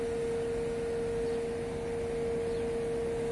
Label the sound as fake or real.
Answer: real